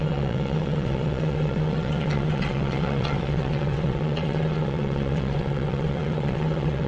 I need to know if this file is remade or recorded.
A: remade